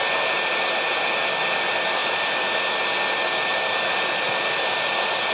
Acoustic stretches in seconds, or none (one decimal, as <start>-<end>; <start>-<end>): 0.0-5.3